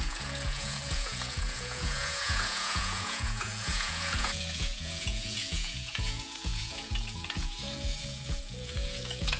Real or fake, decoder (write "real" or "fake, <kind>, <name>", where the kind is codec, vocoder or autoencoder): fake, vocoder, Vocos